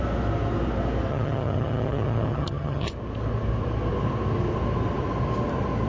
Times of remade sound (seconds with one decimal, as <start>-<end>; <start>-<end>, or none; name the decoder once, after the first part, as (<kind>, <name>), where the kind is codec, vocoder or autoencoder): 1.1-2.9 (vocoder, HiFi-GAN)